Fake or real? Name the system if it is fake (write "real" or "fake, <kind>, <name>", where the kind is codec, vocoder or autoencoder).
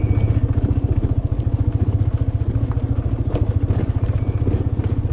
real